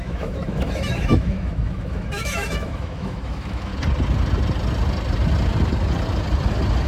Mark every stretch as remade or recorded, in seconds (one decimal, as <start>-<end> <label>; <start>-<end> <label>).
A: 0.0-3.7 remade; 3.7-6.9 recorded

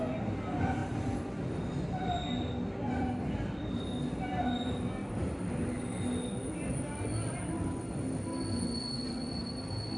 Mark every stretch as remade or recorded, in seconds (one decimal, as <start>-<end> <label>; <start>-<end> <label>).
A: 0.0-10.0 recorded

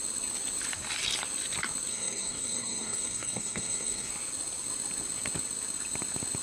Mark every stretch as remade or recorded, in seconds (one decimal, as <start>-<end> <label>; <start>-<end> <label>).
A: 0.0-1.9 recorded; 1.9-4.1 remade; 4.1-6.4 recorded

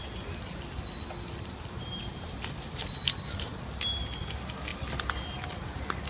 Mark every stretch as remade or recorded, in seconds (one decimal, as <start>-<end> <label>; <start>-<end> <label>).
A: 0.0-6.1 recorded

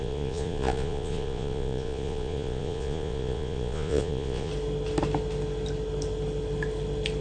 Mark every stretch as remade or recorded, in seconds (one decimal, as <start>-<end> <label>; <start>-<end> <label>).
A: 0.0-4.5 remade; 4.5-7.2 recorded